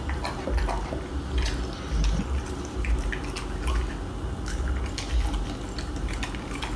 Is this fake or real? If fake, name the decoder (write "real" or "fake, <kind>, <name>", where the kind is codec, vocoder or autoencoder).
real